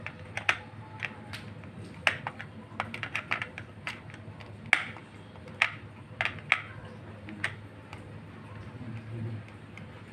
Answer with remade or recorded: recorded